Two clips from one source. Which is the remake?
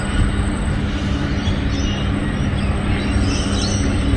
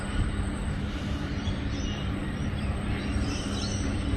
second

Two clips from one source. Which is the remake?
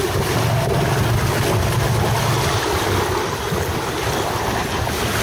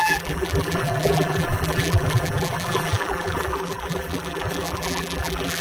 second